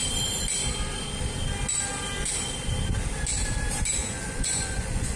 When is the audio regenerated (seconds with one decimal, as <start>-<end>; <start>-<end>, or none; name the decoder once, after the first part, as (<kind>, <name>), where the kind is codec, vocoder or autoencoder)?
4.0-5.2 (vocoder, Vocos)